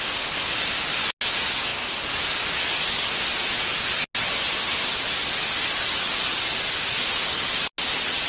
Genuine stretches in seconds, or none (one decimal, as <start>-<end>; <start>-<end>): 0.0-8.3